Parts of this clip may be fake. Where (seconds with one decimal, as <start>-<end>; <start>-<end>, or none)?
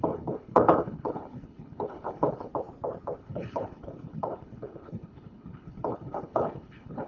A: 0.0-2.5; 3.2-7.1